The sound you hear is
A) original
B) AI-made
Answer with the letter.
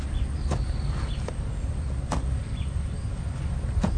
B